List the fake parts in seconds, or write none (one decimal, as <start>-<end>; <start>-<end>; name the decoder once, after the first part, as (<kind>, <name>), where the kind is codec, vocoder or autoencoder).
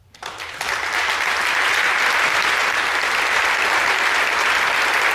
none